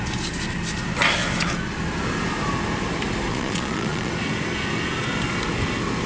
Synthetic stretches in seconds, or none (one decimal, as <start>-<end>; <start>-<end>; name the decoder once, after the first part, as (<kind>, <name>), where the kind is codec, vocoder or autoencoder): 3.3-4.1 (vocoder, Vocos)